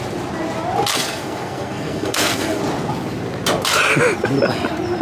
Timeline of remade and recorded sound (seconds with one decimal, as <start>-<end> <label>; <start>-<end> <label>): 0.0-0.9 recorded; 0.9-2.6 remade; 2.6-5.0 recorded